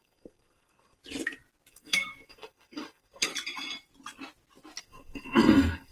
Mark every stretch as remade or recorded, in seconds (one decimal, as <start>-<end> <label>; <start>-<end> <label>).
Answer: 0.0-1.0 remade; 1.0-1.7 recorded; 1.7-3.3 remade; 3.3-4.8 recorded; 4.8-5.9 remade